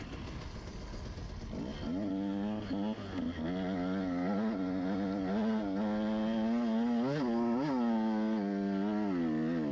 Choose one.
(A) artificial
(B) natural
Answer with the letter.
B